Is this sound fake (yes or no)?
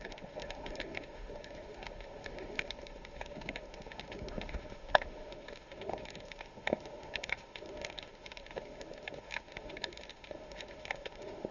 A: yes